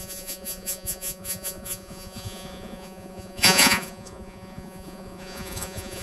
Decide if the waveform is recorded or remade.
remade